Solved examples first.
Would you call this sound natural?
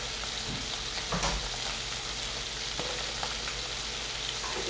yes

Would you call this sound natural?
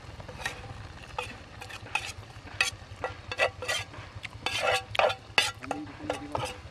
yes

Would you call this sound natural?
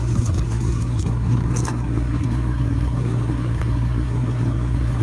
no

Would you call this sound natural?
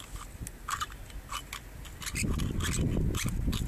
yes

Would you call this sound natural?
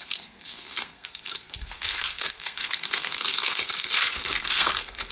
no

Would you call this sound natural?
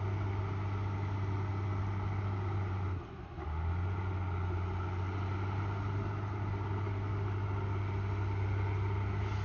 yes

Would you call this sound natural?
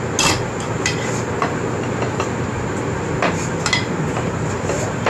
yes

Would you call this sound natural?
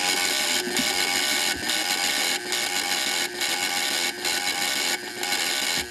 yes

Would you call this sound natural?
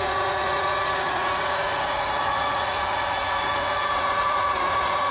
no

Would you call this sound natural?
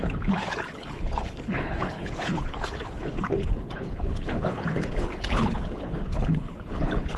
no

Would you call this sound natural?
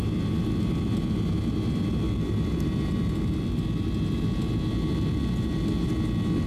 yes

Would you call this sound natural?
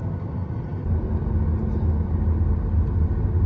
yes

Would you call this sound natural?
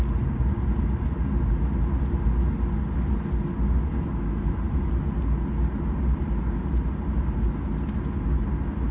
yes